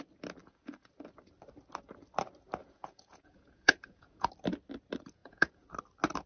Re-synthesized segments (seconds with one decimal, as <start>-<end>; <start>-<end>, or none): 0.4-0.9; 2.6-4.3; 5.2-5.7